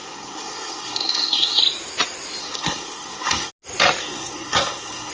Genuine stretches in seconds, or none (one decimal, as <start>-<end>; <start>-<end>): 1.6-2.4; 3.5-4.0